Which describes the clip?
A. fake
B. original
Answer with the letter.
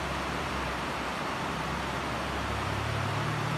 A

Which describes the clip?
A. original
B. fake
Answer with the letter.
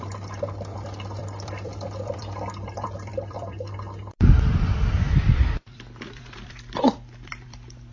B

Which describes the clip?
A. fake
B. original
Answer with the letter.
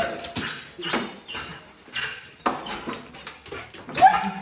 B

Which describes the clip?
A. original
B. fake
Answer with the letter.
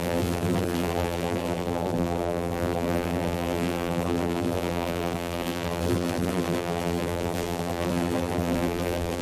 B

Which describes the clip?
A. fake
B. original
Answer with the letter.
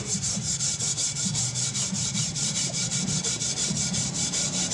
A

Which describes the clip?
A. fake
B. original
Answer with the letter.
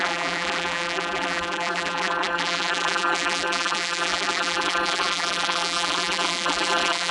A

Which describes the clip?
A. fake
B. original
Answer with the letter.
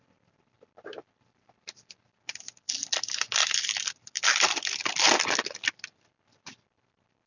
A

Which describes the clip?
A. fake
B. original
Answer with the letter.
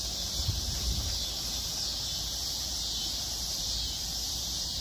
A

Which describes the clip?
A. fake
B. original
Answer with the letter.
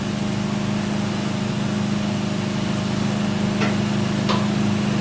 B